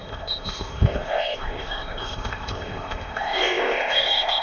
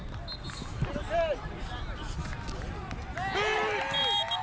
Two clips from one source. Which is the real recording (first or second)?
second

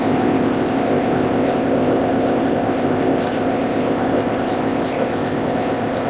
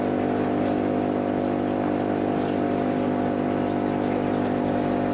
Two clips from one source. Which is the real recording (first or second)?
second